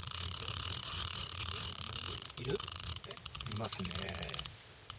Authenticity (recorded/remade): remade